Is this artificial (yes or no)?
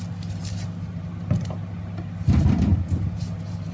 no